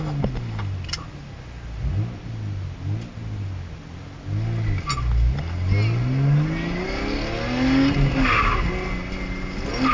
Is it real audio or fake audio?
real